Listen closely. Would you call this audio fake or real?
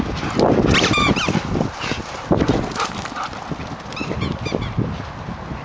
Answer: real